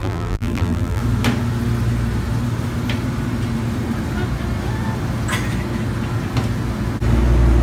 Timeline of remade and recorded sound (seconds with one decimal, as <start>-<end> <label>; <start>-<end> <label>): 0.0-1.0 remade; 1.0-7.6 recorded